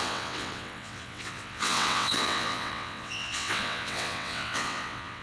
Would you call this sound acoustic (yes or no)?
no